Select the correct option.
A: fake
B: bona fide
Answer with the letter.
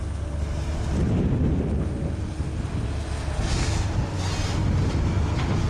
B